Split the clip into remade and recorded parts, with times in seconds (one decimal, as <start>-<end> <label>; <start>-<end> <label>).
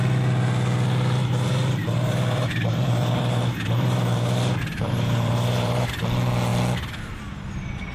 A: 0.0-1.2 recorded; 1.2-5.9 remade; 5.9-7.9 recorded